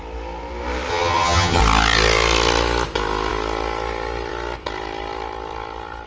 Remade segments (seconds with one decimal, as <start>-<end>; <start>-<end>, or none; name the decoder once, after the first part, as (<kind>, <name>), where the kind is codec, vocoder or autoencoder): 0.9-1.6 (vocoder, HiFi-GAN)